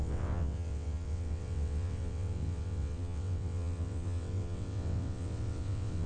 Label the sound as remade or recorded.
remade